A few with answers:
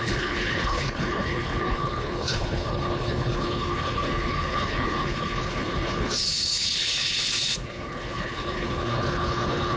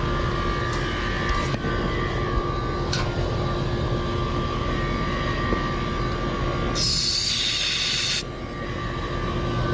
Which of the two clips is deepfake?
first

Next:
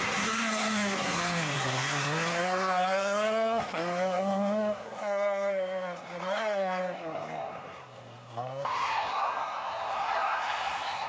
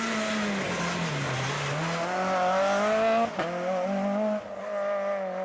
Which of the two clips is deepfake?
first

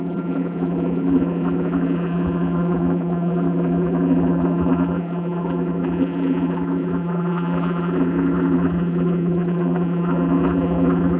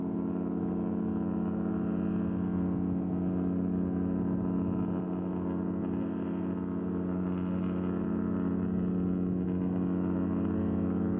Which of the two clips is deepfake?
first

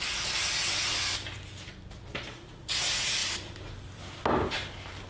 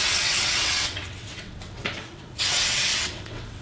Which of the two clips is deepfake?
second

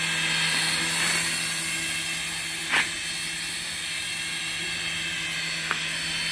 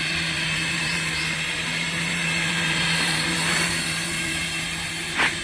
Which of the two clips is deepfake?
second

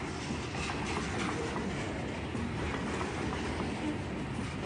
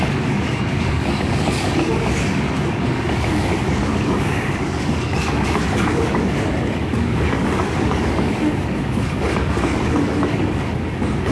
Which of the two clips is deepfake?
second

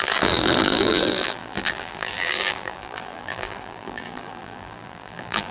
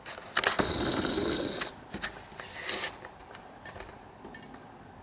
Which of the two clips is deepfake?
first